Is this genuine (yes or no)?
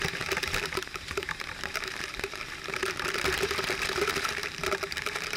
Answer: no